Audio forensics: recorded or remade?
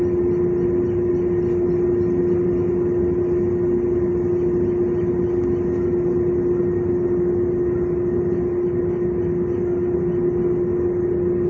recorded